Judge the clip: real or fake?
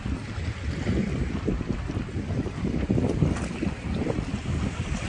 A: real